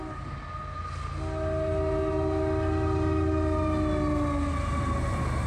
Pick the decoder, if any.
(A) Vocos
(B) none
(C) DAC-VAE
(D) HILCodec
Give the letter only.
B